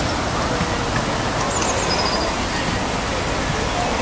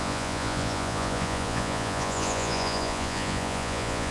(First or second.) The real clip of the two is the first